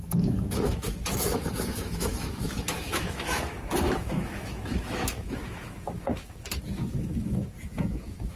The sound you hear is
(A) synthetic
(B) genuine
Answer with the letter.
A